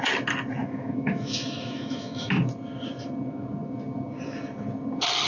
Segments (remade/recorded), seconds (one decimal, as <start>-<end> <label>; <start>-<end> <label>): 0.0-0.6 recorded; 0.6-2.3 remade; 2.3-5.3 recorded